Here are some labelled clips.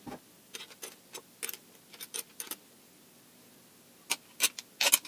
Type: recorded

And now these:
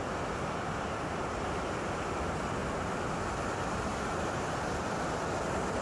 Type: recorded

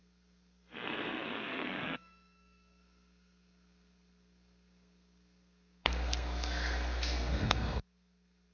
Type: remade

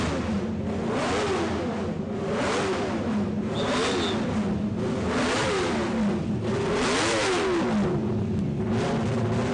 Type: recorded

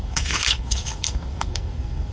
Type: remade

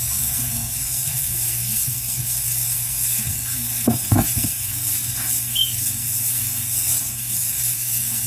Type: remade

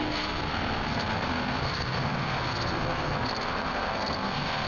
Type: remade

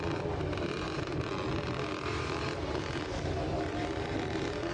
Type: recorded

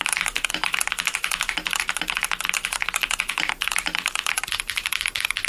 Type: recorded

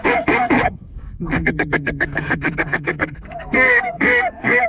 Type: remade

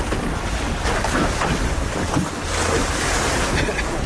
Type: recorded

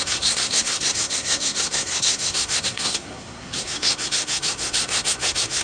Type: remade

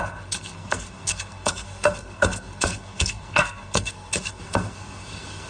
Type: remade